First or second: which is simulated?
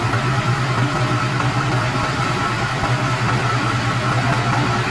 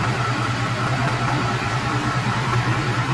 second